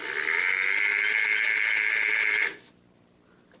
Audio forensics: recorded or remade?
recorded